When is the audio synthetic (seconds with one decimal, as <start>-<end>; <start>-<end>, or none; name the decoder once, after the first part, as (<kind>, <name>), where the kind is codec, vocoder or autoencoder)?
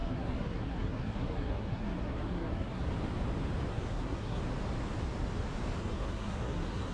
0.0-2.9 (codec, SNAC); 3.7-4.4; 5.8-6.9